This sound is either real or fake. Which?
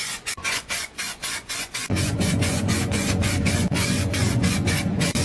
fake